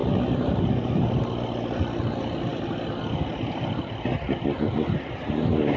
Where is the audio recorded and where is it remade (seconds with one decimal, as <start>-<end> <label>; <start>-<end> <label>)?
0.0-5.8 recorded